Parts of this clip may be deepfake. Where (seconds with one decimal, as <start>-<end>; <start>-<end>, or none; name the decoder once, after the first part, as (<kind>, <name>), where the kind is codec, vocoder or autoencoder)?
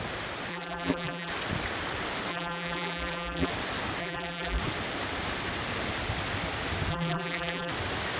0.5-1.3 (vocoder, BigVGAN v2); 2.3-3.5; 4.0-4.6; 6.9-7.7